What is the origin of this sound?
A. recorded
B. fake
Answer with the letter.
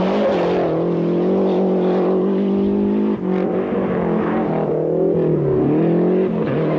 A